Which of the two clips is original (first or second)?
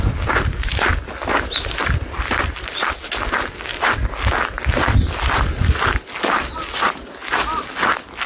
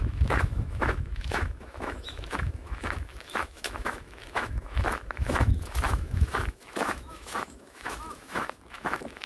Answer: first